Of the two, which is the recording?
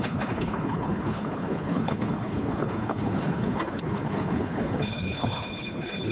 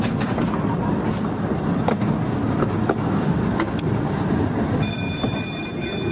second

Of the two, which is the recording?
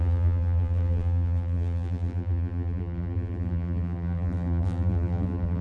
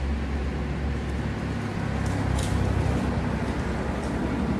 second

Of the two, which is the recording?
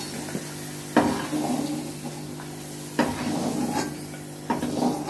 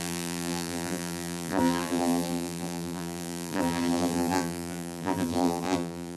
first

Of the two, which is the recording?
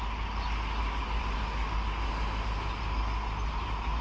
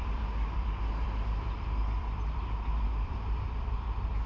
first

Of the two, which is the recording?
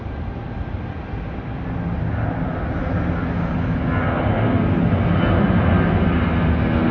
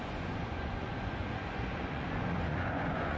first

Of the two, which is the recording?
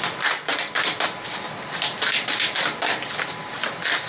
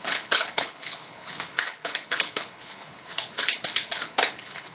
first